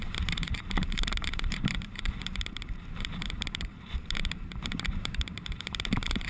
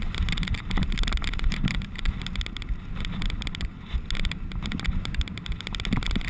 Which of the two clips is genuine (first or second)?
second